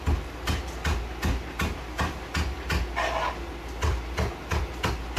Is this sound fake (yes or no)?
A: no